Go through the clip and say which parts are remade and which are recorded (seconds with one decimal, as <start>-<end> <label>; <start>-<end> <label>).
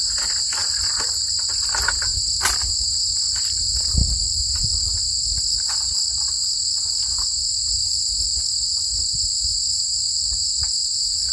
0.0-7.9 recorded; 7.9-8.4 remade; 8.4-11.3 recorded